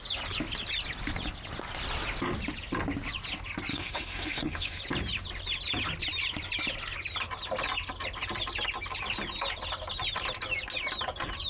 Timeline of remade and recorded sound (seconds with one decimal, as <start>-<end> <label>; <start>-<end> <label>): 0.0-3.7 recorded; 3.7-4.8 remade; 4.8-11.5 recorded